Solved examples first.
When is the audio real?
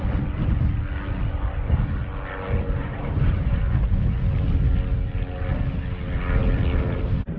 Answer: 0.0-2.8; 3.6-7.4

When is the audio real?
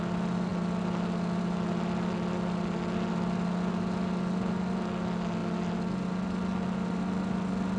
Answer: 0.0-7.8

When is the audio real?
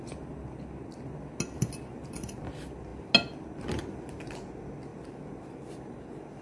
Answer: 0.0-6.4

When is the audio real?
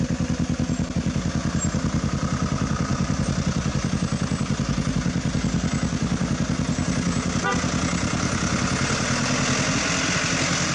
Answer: 0.0-2.9; 3.9-10.7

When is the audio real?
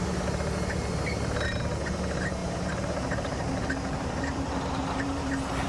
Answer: 0.0-2.4; 5.3-5.7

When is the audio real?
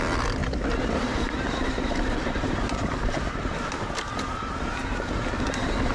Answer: 0.0-0.4; 3.9-5.9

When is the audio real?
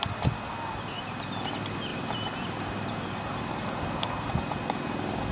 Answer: 0.0-1.9; 4.3-5.3